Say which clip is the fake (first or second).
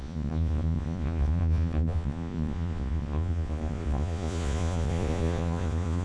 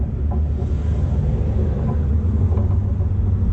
first